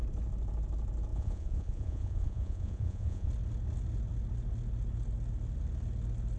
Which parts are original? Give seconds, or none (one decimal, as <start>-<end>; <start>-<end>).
0.0-1.1; 3.3-6.4